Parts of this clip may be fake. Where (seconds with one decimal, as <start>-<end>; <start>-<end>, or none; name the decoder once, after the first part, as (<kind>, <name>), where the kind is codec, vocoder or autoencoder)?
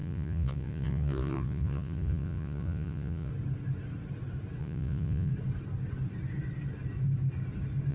0.0-3.3 (vocoder, Vocos); 4.6-5.3